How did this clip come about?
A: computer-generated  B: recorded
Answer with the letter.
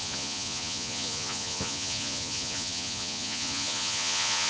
A